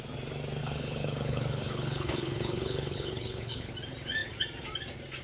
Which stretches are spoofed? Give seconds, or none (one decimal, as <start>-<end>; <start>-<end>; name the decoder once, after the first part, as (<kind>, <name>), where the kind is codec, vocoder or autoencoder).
0.6-3.7 (codec, HILCodec)